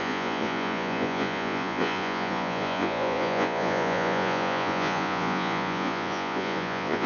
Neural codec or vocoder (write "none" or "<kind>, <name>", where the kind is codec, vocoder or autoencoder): vocoder, Vocos